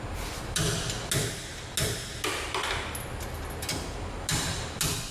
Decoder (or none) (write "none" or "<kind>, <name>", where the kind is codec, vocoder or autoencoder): none